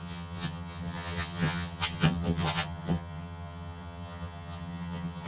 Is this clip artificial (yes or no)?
yes